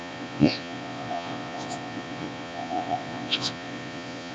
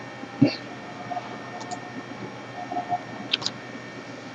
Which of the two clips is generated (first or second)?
first